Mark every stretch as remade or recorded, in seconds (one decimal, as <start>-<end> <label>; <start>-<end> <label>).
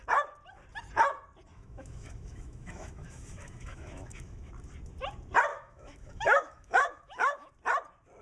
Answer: 0.0-1.5 recorded; 1.5-4.5 remade; 4.5-5.5 recorded; 5.5-7.5 remade; 7.5-8.2 recorded